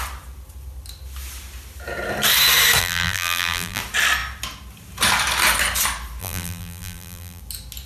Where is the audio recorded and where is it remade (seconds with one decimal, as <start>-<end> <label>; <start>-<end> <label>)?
0.0-2.8 recorded; 2.8-3.8 remade; 3.8-6.2 recorded; 6.2-7.4 remade; 7.4-7.9 recorded

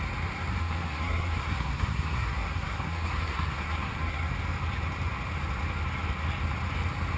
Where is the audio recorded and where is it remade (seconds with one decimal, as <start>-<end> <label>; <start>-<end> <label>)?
0.0-0.5 recorded; 0.5-4.3 remade; 4.3-7.2 recorded

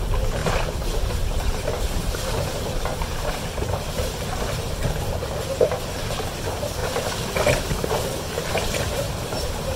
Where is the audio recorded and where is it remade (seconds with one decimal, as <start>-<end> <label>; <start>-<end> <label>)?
0.0-6.8 remade; 6.8-8.5 recorded; 8.5-9.8 remade

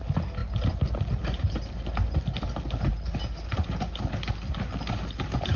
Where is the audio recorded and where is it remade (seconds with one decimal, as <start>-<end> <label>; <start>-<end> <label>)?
0.0-5.6 recorded

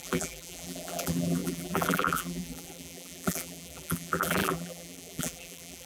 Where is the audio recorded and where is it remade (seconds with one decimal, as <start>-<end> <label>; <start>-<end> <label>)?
0.0-5.9 remade

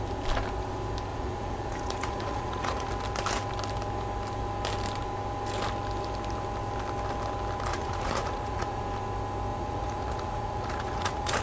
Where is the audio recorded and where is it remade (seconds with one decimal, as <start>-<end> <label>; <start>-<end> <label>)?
0.0-1.1 recorded; 1.1-2.9 remade; 2.9-7.7 recorded; 7.7-8.8 remade; 8.8-9.5 recorded; 9.5-11.4 remade

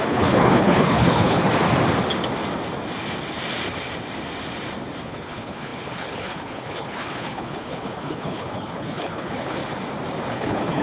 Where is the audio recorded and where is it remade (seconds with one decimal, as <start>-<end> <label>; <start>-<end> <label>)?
0.0-1.4 remade; 1.4-5.0 recorded; 5.0-9.6 remade; 9.6-10.3 recorded; 10.3-10.8 remade